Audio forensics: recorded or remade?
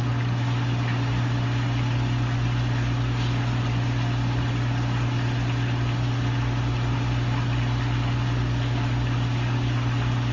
recorded